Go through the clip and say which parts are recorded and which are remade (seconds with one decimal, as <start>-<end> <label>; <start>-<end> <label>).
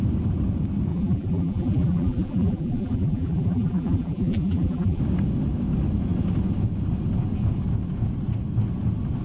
0.0-0.9 recorded; 0.9-5.0 remade; 5.0-9.2 recorded